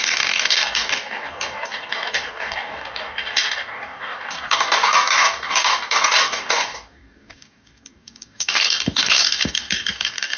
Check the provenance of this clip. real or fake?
fake